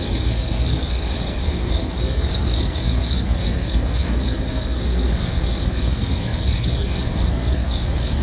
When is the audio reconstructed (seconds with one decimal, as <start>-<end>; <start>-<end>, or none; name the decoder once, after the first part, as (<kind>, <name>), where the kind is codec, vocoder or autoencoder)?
0.0-8.2 (codec, SNAC)